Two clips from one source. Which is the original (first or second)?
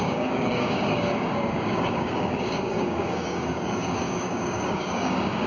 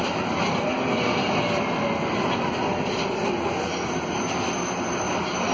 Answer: second